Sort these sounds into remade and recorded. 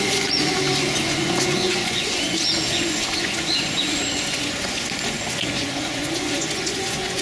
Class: remade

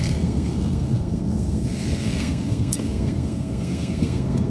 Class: remade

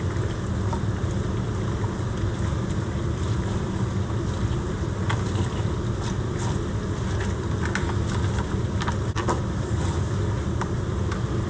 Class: recorded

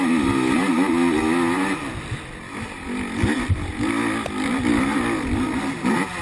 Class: recorded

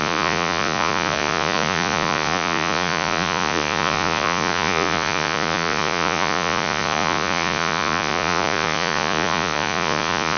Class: remade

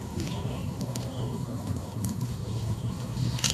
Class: remade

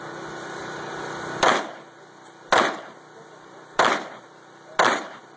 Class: recorded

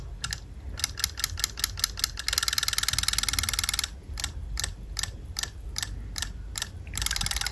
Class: recorded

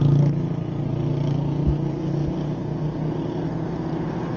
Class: recorded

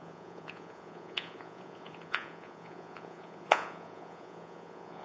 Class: remade